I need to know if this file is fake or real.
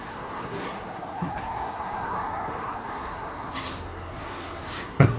fake